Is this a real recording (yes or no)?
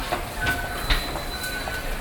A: yes